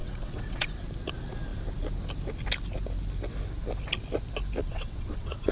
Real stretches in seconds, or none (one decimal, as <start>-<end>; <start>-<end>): 0.7-4.6